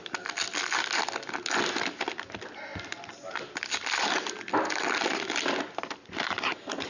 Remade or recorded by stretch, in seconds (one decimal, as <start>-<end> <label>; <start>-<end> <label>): 0.0-6.9 recorded